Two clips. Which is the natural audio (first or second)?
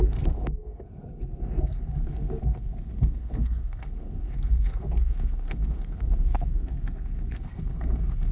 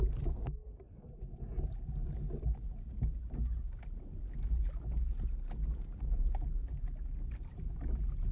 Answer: second